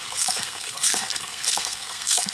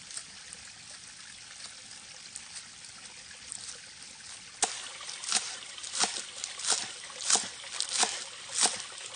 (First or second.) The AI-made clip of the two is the first